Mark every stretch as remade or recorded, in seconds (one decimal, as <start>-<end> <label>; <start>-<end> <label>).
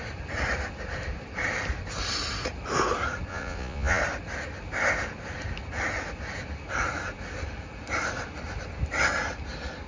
0.0-3.3 recorded; 3.3-4.0 remade; 4.0-9.9 recorded